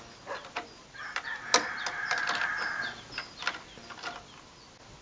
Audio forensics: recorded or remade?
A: recorded